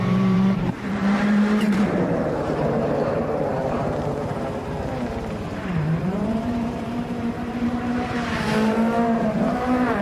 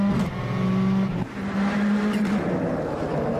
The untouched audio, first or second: second